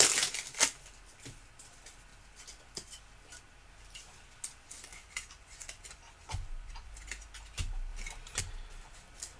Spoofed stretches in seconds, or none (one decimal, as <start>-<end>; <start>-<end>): 4.9-6.9